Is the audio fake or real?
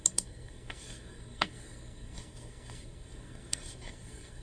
fake